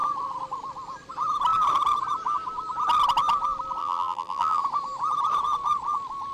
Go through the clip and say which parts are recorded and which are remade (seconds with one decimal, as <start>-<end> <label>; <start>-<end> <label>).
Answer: 0.0-3.8 recorded; 3.8-4.6 remade; 4.6-6.3 recorded